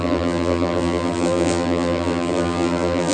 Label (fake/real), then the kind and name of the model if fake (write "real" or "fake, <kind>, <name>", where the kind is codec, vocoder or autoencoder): fake, vocoder, BigVGAN v2